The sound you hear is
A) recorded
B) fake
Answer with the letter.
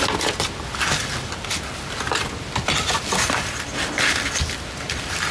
A